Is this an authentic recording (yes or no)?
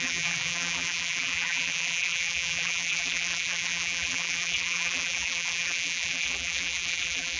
no